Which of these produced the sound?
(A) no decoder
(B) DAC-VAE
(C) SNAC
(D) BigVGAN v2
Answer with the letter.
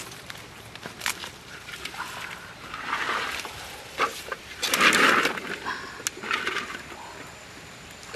A